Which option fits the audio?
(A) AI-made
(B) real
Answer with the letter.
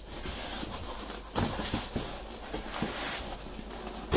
B